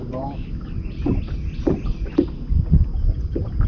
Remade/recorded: recorded